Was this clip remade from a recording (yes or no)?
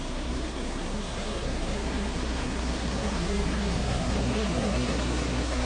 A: yes